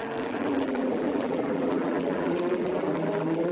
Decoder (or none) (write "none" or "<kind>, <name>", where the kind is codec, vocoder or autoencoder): vocoder, BigVGAN v2